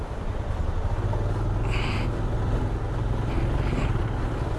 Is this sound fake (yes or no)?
no